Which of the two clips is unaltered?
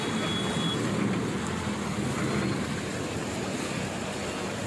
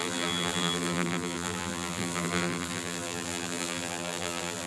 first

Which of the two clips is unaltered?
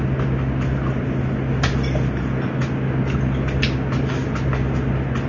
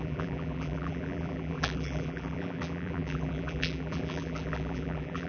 first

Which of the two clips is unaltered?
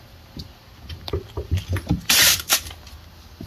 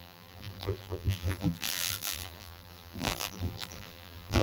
first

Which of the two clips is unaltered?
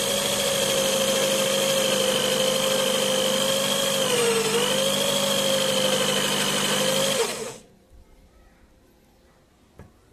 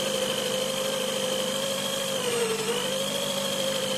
first